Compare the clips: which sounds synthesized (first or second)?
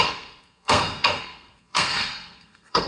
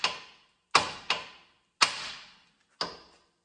first